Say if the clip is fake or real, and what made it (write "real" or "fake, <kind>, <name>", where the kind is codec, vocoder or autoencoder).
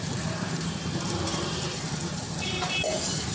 fake, vocoder, BigVGAN v2